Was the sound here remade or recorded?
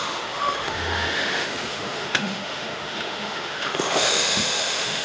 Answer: remade